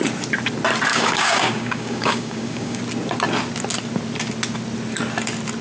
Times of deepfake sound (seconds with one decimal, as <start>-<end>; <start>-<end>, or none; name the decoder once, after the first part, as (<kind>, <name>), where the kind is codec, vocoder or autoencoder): 0.9-2.8 (codec, DAC)